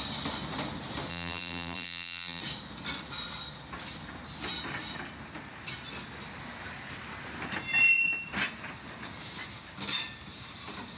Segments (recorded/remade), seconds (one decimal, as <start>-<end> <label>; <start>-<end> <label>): 0.0-1.1 recorded; 1.1-2.4 remade; 2.4-11.0 recorded